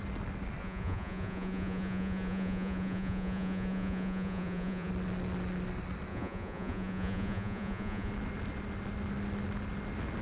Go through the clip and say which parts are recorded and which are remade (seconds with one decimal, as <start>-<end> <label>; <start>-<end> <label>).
0.0-0.6 recorded; 0.6-4.9 remade; 4.9-6.1 recorded; 6.1-8.1 remade; 8.1-10.2 recorded